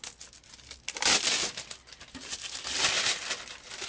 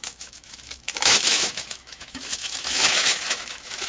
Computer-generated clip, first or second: second